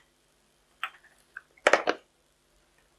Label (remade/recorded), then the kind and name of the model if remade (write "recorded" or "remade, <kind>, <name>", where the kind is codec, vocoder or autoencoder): recorded